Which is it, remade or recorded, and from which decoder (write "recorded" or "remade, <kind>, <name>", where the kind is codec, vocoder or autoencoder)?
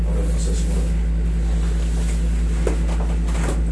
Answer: recorded